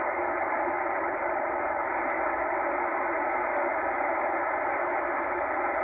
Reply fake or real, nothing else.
real